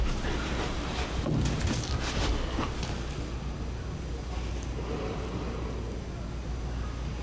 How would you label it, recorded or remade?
recorded